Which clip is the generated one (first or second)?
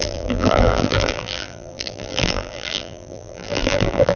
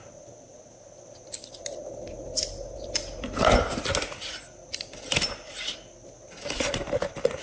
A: first